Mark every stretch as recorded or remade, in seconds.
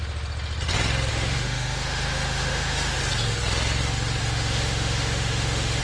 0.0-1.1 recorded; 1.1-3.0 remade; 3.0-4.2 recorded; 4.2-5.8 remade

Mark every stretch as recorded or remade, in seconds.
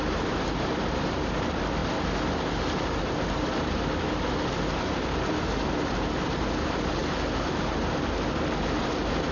0.0-1.8 remade; 1.8-3.0 recorded; 3.0-7.0 remade; 7.0-8.8 recorded; 8.8-9.3 remade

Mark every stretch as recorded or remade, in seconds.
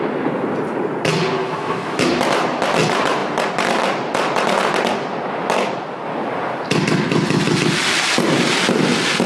0.0-1.4 recorded; 1.4-2.1 remade; 2.1-9.3 recorded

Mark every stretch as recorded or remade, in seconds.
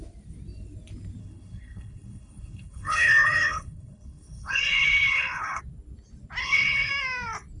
0.0-1.2 recorded; 1.2-5.6 remade; 5.6-6.4 recorded; 6.4-6.9 remade; 6.9-7.6 recorded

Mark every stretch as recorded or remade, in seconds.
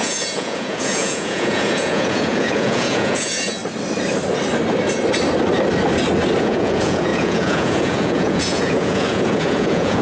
0.0-3.6 remade; 3.6-6.4 recorded; 6.4-10.0 remade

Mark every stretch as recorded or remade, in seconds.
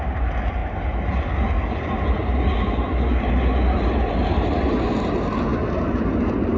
0.0-6.6 recorded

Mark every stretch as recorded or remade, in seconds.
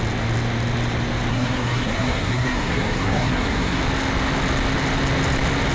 0.0-1.3 recorded; 1.3-3.8 remade; 3.8-5.7 recorded